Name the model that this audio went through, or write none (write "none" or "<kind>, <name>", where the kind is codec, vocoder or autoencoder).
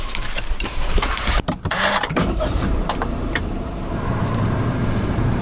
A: vocoder, BigVGAN v2